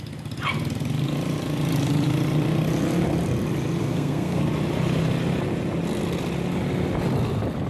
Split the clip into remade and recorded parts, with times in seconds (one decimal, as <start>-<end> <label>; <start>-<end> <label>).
0.0-3.8 recorded; 3.8-4.4 remade; 4.4-7.7 recorded